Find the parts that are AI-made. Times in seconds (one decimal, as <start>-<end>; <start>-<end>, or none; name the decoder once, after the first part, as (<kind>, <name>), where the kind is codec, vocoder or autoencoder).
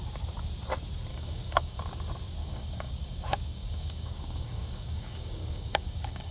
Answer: 1.1-1.8 (codec, DAC); 2.4-6.3